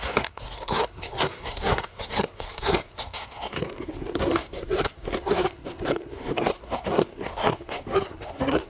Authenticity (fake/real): fake